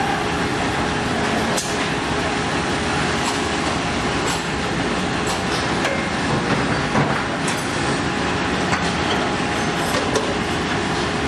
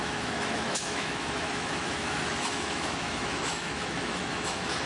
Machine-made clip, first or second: second